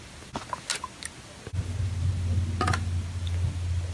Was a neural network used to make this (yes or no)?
no